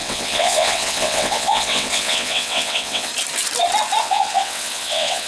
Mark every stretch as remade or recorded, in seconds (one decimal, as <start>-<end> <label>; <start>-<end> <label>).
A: 0.0-3.1 remade; 3.1-4.0 recorded; 4.0-5.3 remade